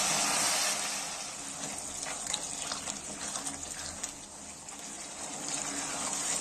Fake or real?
real